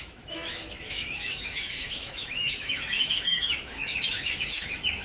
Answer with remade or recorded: remade